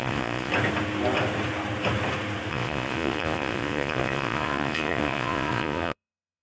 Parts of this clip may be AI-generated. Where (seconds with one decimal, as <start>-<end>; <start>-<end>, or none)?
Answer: 0.0-0.5; 2.5-6.4